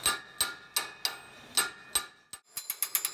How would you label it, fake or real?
real